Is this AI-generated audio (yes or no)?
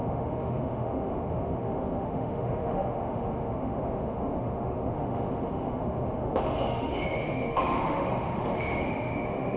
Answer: yes